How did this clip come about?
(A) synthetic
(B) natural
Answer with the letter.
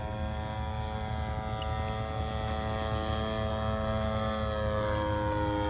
B